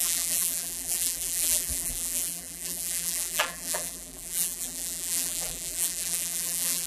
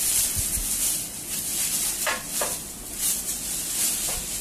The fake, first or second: first